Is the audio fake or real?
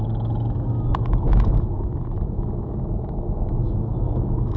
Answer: fake